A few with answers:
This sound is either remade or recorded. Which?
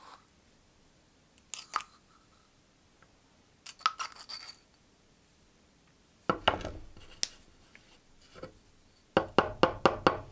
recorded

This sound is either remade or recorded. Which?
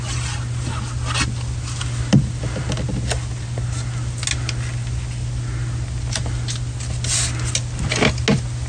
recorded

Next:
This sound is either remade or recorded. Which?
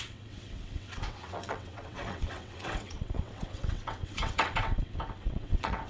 remade